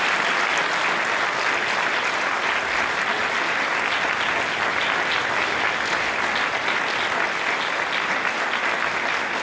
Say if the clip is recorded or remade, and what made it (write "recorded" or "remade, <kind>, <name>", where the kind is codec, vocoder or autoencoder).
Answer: recorded